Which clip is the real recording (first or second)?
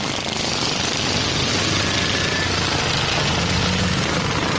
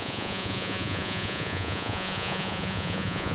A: first